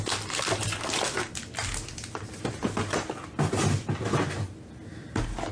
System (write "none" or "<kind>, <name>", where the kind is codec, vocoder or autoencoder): none